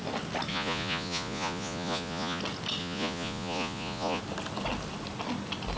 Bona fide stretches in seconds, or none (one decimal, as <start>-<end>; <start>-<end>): 0.0-0.5; 2.4-2.8; 4.2-5.8